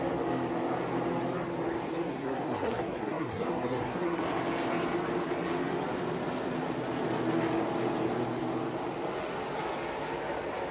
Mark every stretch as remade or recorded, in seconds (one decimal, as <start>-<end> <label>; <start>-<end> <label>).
0.0-1.9 recorded; 1.9-4.2 remade; 4.2-10.7 recorded